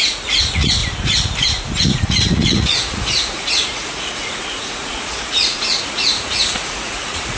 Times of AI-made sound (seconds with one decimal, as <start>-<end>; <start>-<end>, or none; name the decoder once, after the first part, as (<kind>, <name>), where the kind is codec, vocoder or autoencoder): 0.0-0.8 (vocoder, Vocos); 1.8-7.4